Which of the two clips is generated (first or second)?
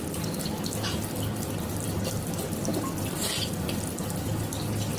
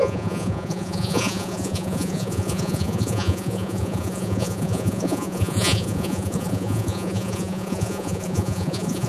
second